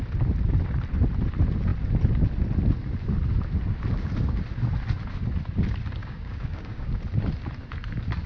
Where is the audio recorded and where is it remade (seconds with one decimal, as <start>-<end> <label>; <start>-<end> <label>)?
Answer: 0.0-6.0 recorded; 6.0-6.9 remade; 6.9-8.3 recorded